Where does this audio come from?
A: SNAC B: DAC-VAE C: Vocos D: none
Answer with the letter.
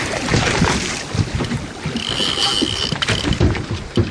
D